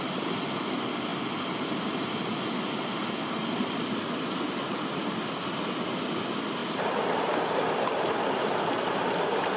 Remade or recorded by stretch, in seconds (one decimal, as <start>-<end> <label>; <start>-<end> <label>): 0.0-9.6 recorded